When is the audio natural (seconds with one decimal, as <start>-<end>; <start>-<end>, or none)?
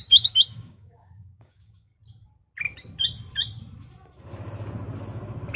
1.9-5.6